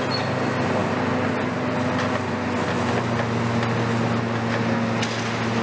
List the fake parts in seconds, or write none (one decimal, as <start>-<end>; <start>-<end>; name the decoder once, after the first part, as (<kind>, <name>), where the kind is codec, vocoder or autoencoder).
none